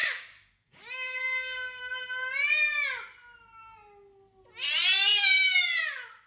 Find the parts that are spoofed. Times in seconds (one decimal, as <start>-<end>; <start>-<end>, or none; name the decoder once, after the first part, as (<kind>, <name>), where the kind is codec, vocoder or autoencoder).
0.0-1.8 (codec, DAC)